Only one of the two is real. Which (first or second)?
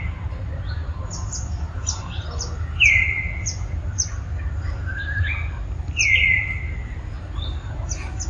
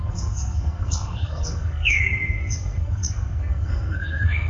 first